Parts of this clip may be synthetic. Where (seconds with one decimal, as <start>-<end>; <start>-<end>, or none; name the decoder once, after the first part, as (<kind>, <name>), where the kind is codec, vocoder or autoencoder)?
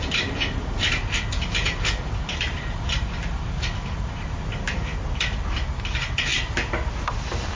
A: none